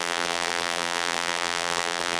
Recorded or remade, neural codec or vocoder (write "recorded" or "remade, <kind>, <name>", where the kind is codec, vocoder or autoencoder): remade, vocoder, BigVGAN v2